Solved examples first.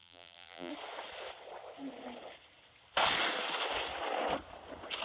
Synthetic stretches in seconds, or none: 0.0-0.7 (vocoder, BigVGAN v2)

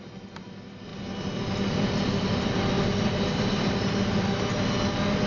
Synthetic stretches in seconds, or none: none

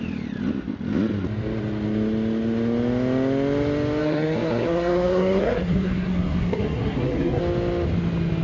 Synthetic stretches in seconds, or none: 4.0-7.4 (codec, SNAC)

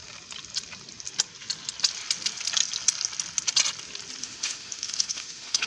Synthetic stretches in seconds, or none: 4.2-5.7 (autoencoder, DAC-VAE)

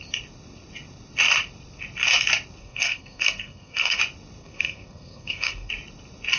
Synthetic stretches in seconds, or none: 2.6-4.0 (codec, SNAC); 4.4-5.7

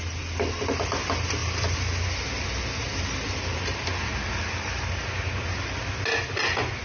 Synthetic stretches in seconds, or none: none

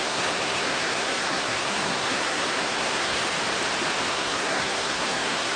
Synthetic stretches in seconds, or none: 0.0-3.2 (codec, SNAC); 4.1-5.6

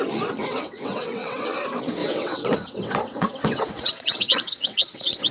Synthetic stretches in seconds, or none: 0.4-1.6 (vocoder, WaveNeXt); 2.0-5.3